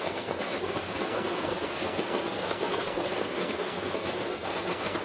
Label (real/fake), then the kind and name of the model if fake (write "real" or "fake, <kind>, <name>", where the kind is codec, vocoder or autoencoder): fake, codec, SNAC